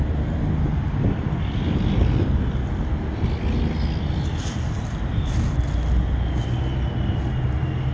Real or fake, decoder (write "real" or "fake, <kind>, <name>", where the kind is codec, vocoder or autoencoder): real